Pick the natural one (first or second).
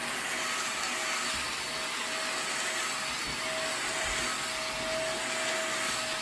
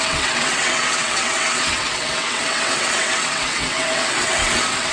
first